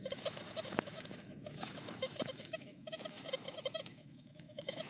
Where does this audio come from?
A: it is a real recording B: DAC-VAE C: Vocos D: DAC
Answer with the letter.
B